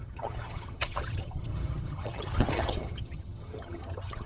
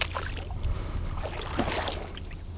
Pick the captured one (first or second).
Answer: second